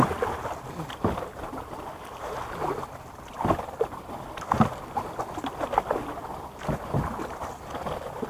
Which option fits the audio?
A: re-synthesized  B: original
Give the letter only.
B